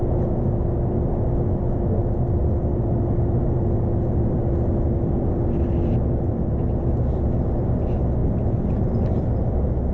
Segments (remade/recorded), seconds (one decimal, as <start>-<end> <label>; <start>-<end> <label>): 0.0-8.2 recorded; 8.2-9.5 remade; 9.5-9.9 recorded